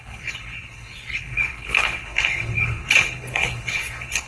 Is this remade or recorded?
remade